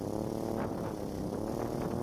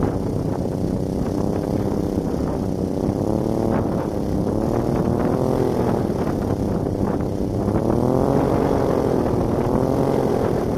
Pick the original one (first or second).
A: first